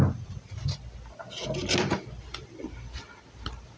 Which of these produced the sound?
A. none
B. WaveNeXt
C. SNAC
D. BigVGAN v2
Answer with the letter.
A